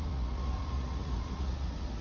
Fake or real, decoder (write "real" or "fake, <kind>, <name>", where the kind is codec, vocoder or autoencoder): fake, vocoder, Vocos